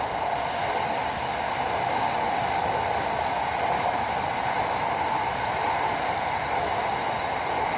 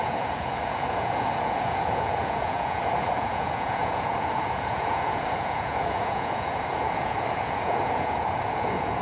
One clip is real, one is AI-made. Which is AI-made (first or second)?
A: second